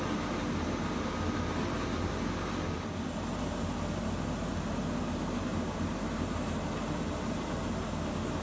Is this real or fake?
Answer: real